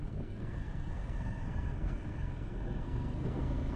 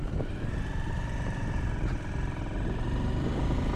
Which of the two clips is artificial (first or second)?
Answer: first